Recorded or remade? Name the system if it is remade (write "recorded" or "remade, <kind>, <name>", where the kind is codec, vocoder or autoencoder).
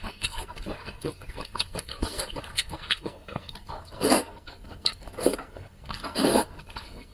remade, codec, SNAC